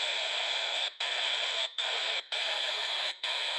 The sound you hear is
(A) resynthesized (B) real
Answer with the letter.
A